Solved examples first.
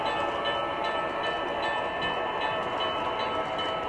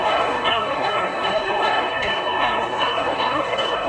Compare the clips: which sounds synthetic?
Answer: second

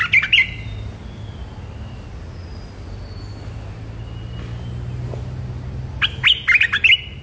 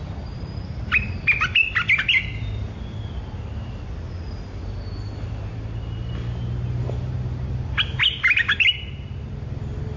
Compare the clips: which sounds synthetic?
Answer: second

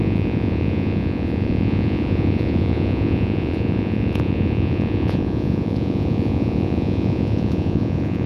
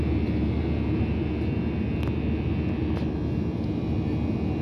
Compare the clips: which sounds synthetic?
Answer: first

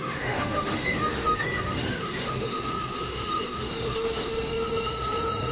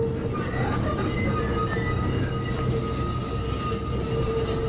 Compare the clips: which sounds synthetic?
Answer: first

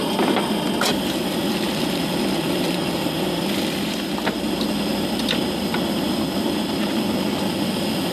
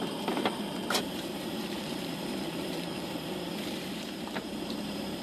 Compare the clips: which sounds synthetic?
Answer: second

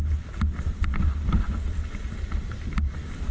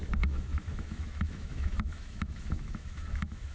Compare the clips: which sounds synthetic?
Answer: second